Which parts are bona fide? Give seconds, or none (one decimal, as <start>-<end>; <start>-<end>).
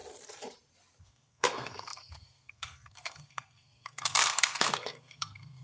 0.0-1.0